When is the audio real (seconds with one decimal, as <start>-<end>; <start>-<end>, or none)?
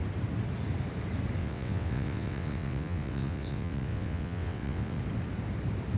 0.0-1.4; 5.0-6.0